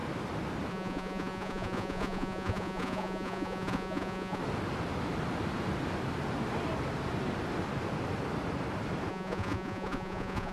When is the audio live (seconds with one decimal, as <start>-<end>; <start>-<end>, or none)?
0.0-0.7; 4.4-9.1